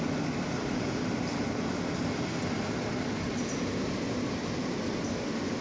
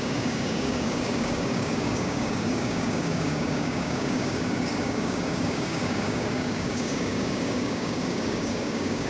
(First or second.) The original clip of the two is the first